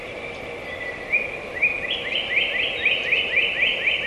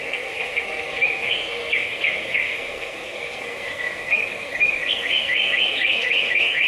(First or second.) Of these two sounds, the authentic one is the first